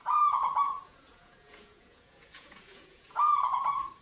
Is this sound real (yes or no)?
no